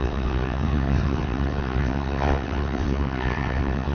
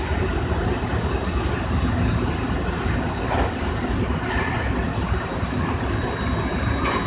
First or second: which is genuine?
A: second